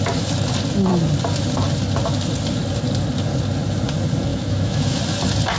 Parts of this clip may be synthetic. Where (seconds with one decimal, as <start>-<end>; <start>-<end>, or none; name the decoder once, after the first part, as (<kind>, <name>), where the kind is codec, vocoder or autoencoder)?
4.3-5.0 (autoencoder, DAC-VAE)